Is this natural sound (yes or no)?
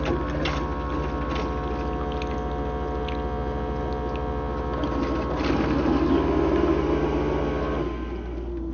yes